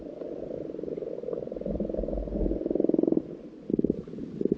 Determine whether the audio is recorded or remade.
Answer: recorded